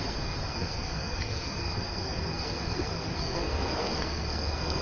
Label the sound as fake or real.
fake